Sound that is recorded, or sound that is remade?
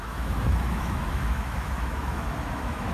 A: remade